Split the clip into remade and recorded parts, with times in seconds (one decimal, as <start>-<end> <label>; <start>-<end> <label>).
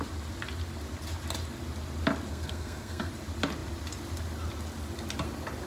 0.0-2.3 recorded; 2.3-3.1 remade; 3.1-5.7 recorded